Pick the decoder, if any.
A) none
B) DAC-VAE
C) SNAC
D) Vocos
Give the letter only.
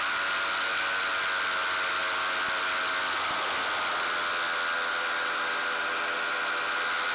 A